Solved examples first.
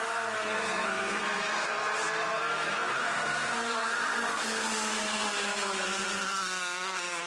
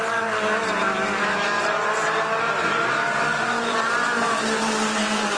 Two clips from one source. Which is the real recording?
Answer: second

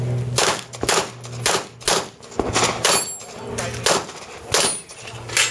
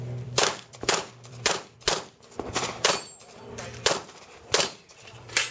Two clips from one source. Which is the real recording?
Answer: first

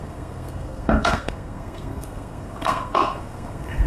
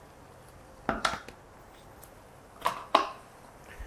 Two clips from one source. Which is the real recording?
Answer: second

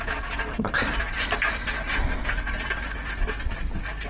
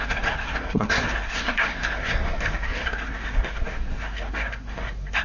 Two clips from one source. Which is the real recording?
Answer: first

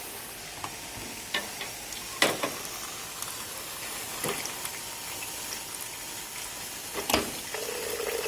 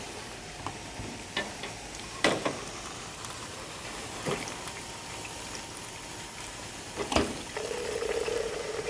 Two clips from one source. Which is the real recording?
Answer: first